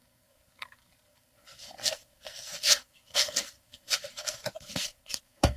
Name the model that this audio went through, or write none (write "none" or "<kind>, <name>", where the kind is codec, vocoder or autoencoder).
codec, SNAC